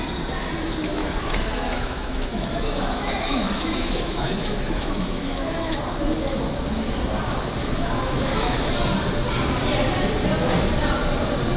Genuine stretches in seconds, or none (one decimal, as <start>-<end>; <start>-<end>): 0.0-1.0; 5.8-7.6; 8.7-11.6